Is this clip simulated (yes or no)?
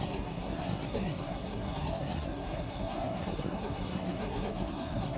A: yes